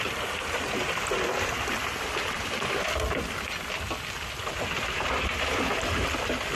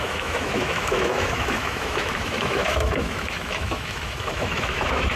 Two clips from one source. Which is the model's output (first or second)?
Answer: second